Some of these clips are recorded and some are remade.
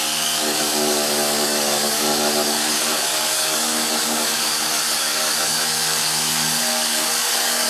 remade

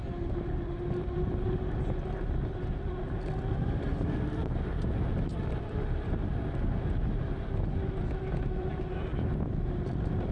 recorded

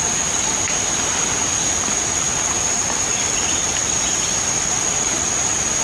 recorded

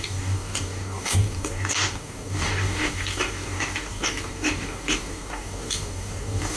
remade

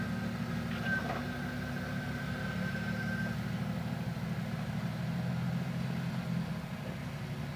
recorded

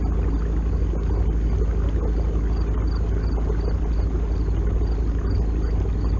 recorded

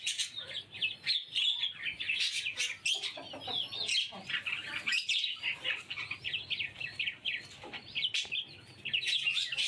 recorded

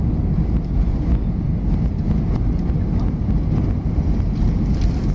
recorded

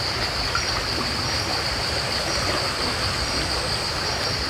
recorded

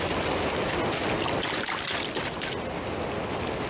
recorded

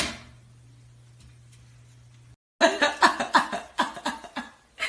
recorded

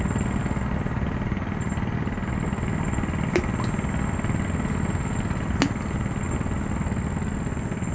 recorded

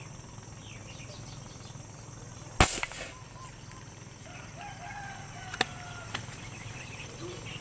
recorded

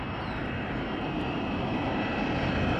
recorded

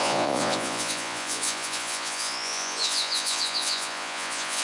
remade